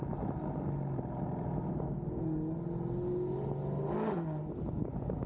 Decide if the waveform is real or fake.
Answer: real